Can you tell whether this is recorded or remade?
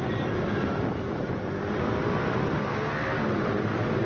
recorded